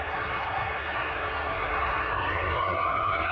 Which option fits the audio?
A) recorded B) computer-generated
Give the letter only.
B